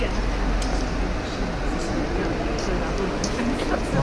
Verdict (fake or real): real